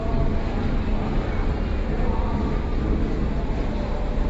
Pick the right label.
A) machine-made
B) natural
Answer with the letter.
B